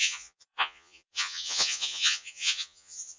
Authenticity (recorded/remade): remade